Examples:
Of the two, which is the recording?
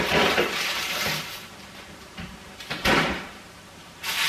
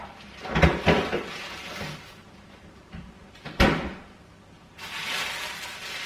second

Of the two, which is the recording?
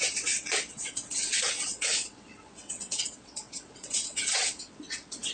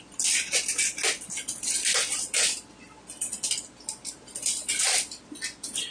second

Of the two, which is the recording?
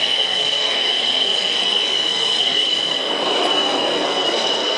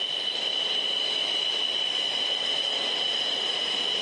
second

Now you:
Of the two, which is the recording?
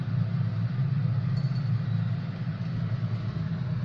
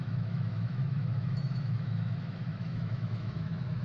first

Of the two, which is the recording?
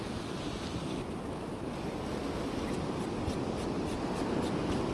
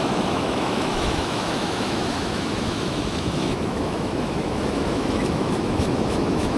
first